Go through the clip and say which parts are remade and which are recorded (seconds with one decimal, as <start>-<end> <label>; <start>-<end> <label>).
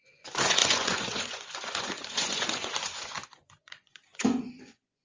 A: 0.0-5.0 remade